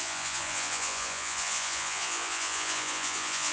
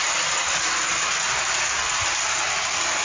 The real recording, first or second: second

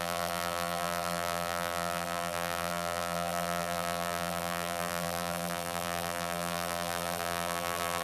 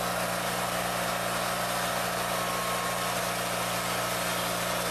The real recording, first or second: second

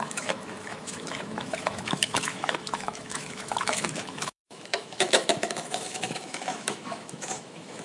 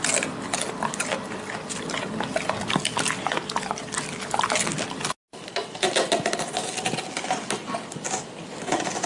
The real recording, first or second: second